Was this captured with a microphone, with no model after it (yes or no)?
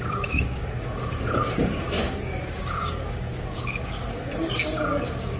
no